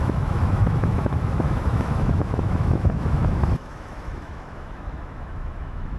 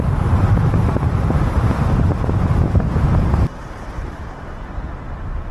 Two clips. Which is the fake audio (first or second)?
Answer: first